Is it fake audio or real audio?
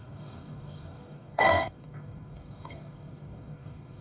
fake